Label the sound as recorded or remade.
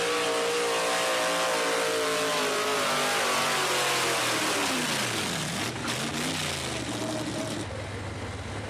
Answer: recorded